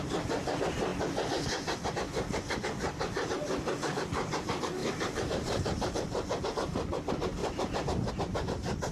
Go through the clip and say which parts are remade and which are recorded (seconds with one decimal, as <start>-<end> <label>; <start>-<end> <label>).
0.0-4.8 recorded; 4.8-6.4 remade; 6.4-8.9 recorded